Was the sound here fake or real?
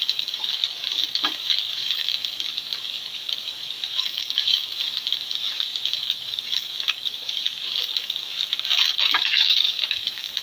fake